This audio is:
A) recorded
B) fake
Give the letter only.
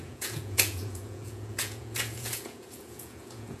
B